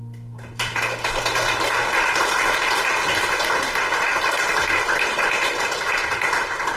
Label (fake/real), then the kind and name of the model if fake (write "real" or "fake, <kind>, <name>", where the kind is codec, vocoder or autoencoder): real